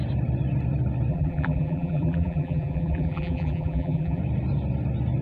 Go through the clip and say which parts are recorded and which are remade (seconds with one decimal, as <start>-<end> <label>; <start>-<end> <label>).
0.0-1.1 recorded; 1.1-4.2 remade; 4.2-5.2 recorded